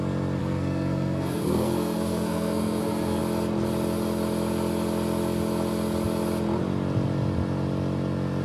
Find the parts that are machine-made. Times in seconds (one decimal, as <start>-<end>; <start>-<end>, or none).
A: 0.4-3.2